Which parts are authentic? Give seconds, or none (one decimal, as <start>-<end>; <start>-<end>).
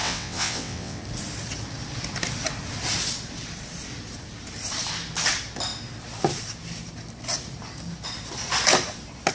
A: 1.0-9.3